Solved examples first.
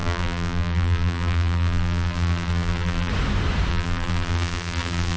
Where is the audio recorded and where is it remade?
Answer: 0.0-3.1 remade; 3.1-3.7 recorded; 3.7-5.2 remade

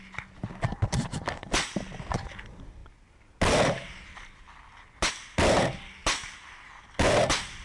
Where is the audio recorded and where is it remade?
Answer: 0.0-7.6 recorded

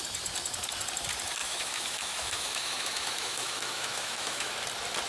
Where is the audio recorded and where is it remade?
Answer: 0.0-1.4 recorded; 1.4-4.5 remade; 4.5-5.1 recorded

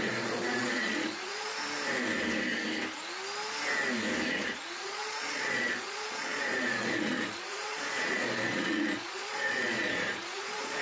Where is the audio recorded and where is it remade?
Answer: 0.0-1.5 remade; 1.5-4.3 recorded; 4.3-10.8 remade

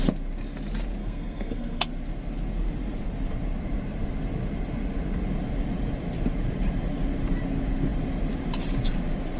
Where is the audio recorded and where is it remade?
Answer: 0.0-1.0 recorded; 1.0-1.9 remade; 1.9-9.4 recorded

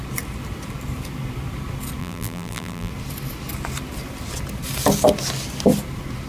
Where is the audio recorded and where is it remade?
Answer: 0.0-2.0 recorded; 2.0-2.9 remade; 2.9-6.3 recorded

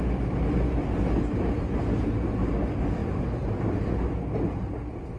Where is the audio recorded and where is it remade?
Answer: 0.0-5.2 recorded